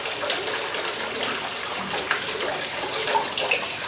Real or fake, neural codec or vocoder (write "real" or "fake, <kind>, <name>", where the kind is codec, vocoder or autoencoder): real